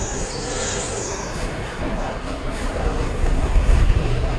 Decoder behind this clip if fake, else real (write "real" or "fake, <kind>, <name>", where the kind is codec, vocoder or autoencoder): fake, codec, SNAC